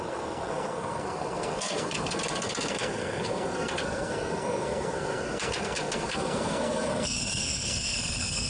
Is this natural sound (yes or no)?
no